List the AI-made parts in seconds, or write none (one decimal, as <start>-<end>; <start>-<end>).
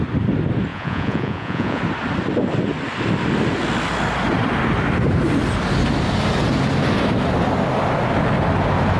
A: 0.7-1.8